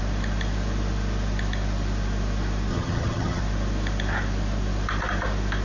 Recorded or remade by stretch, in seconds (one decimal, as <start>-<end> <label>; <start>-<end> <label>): 0.0-2.7 recorded; 2.7-3.4 remade; 3.4-5.6 recorded

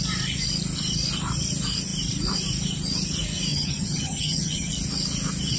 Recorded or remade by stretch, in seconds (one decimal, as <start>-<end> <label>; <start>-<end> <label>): 0.0-3.5 recorded; 3.5-4.7 remade; 4.7-5.6 recorded

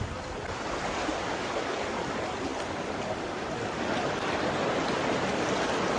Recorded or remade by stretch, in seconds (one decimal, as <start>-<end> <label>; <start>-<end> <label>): 0.0-6.0 recorded

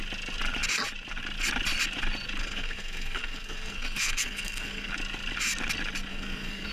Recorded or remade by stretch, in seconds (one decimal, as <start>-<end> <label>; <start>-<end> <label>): 0.0-2.4 recorded; 2.4-4.9 remade; 4.9-6.1 recorded; 6.1-6.7 remade

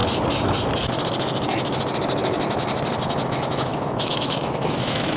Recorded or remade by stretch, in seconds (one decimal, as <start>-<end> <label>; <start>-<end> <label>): 0.0-3.1 recorded; 3.1-5.2 remade